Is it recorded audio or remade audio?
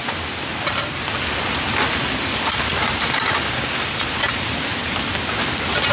recorded